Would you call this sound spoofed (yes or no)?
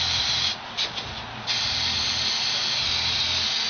no